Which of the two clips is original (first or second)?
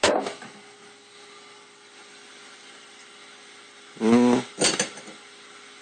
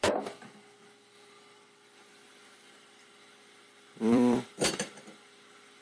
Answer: first